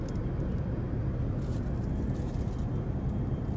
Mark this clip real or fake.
real